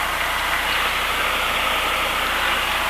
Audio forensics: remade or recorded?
recorded